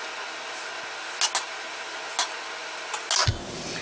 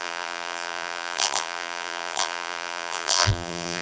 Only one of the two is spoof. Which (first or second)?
second